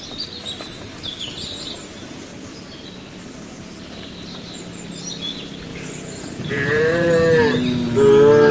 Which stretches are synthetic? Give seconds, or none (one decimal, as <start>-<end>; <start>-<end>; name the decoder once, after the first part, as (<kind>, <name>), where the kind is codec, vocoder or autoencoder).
5.7-7.1 (vocoder, Vocos)